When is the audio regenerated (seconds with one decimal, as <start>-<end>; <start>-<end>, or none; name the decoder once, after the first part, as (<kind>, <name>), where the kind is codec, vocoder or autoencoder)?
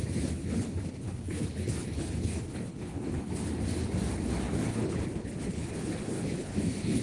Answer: 0.4-3.3 (codec, HILCodec); 4.7-7.0